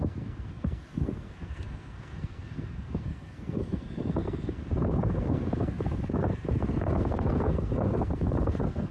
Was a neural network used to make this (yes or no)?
yes